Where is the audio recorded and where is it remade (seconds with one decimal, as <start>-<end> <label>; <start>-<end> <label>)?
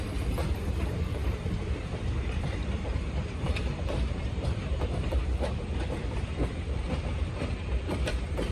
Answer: 0.0-8.5 remade